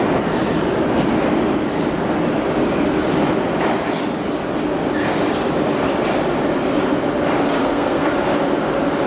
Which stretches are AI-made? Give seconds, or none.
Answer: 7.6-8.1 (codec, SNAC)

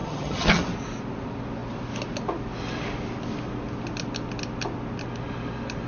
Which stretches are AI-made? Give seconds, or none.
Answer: 0.0-0.6 (vocoder, HiFi-GAN)